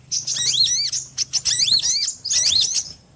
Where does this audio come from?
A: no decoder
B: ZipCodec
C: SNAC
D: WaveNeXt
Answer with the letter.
A